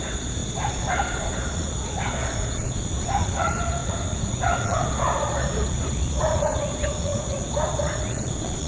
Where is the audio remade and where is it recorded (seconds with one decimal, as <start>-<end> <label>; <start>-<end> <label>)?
0.0-8.7 remade